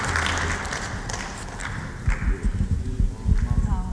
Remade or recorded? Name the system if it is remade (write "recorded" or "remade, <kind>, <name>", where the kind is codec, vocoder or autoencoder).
recorded